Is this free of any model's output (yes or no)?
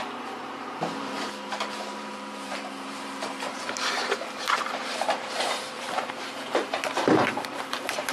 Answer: no